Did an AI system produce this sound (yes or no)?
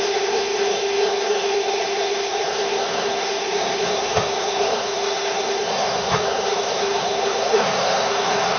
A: yes